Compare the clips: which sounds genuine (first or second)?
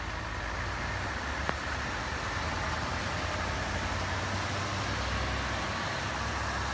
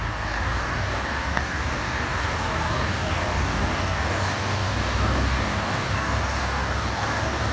first